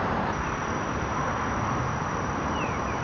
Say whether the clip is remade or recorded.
remade